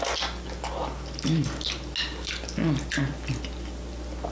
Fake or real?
real